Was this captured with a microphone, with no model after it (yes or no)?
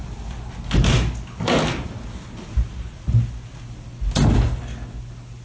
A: yes